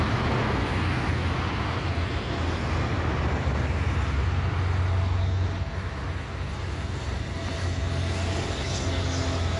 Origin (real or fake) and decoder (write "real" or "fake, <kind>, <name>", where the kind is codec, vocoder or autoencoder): real